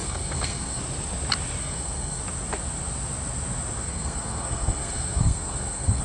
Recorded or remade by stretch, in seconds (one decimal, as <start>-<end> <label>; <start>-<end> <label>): 0.0-0.8 remade; 0.8-1.6 recorded; 1.6-2.2 remade; 2.2-3.8 recorded; 3.8-6.0 remade